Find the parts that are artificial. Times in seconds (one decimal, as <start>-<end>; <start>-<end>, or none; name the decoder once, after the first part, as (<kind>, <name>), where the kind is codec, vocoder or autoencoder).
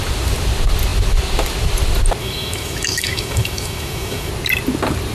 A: 2.2-4.3 (autoencoder, DAC-VAE)